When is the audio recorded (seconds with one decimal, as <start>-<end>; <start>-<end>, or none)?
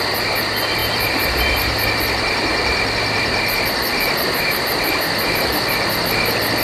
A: 0.0-0.8; 1.4-6.6